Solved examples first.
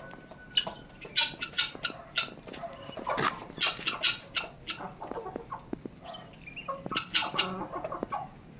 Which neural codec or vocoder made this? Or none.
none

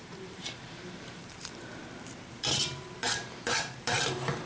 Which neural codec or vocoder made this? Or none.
vocoder, BigVGAN v2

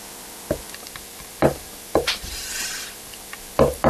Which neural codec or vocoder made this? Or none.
none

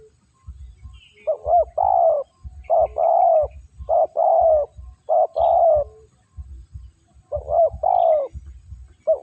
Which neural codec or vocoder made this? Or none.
none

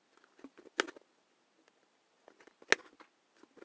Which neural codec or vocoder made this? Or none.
none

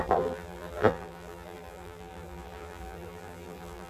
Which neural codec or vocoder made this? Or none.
vocoder, BigVGAN v2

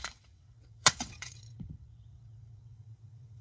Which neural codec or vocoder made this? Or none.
vocoder, WaveNeXt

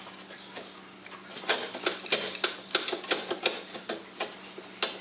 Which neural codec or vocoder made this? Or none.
none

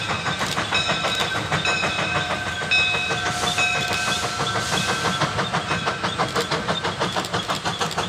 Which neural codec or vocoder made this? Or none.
none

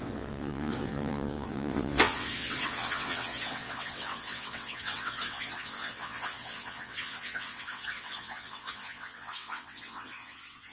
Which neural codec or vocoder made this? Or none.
vocoder, WaveNeXt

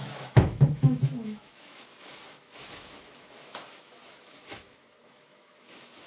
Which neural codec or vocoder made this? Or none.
autoencoder, DAC-VAE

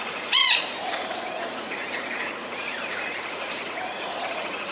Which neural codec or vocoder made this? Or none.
vocoder, Vocos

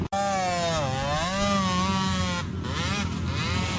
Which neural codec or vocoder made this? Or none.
none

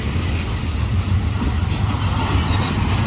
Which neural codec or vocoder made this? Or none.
none